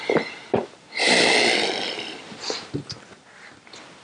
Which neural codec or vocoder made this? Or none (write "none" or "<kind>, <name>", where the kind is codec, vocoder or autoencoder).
none